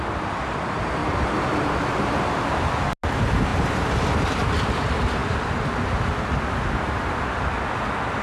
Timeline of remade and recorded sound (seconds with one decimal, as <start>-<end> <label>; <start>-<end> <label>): 0.0-1.0 recorded; 1.0-2.4 remade; 2.4-8.2 recorded